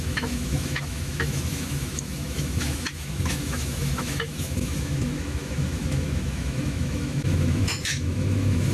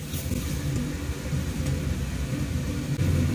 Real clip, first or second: second